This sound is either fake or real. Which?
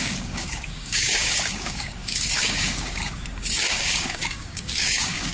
fake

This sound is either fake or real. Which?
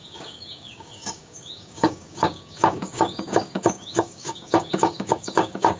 fake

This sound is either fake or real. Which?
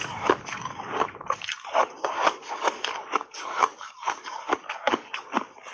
fake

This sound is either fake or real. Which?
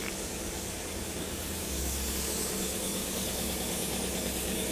fake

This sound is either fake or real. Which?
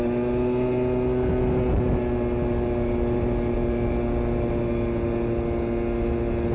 real